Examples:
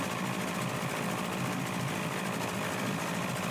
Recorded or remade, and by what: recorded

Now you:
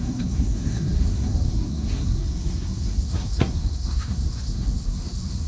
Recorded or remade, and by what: remade, codec, SNAC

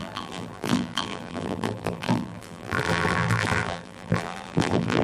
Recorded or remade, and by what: remade, vocoder, BigVGAN v2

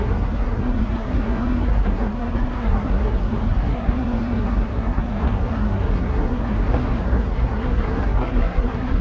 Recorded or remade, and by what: remade, codec, SNAC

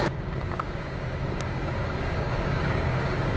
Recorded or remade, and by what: remade, codec, DAC